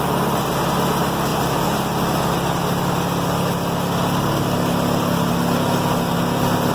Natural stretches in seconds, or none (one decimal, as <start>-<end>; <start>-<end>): 0.0-6.7